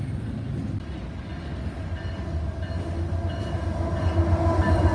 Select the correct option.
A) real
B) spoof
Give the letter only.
A